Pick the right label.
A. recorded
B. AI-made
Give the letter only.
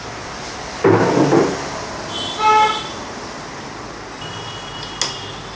A